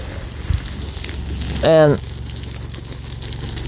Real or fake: real